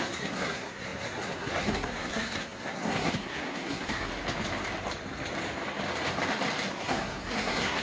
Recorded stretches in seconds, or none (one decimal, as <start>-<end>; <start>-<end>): 4.1-6.7